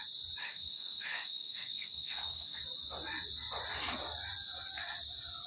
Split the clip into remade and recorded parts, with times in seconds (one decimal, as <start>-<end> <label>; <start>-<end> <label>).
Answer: 0.0-0.4 recorded; 0.4-2.6 remade; 2.6-5.5 recorded